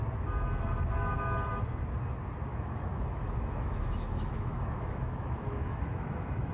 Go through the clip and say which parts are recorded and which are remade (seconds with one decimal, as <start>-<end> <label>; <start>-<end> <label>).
0.0-2.5 recorded; 2.5-6.5 remade